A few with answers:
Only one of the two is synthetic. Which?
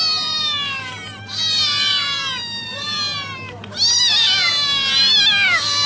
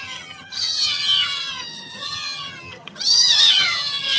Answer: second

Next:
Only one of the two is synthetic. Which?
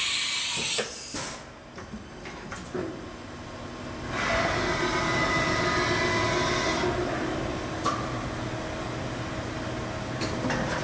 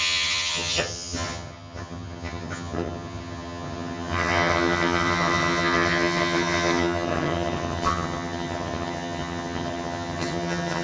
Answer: second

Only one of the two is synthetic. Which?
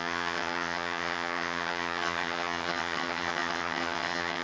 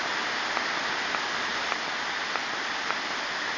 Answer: first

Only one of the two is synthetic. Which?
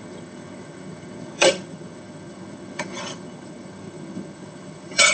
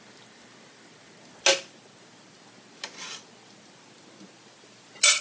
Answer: first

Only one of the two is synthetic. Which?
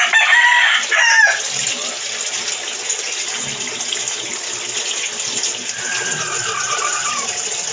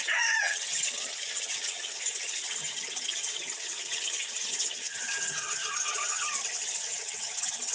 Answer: second